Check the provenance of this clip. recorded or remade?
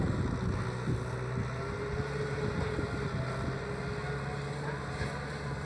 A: recorded